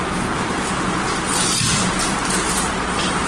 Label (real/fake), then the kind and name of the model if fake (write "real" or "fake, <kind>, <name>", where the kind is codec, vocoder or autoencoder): real